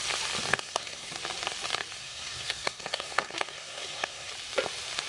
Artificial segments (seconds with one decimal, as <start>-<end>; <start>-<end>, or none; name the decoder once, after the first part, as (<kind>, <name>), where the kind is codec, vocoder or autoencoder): 0.5-1.1 (codec, SNAC); 2.0-4.3